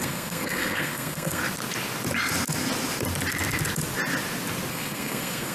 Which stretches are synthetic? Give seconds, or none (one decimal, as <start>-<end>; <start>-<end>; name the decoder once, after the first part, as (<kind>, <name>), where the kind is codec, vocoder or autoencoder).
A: 0.0-1.4 (codec, SNAC); 4.7-5.5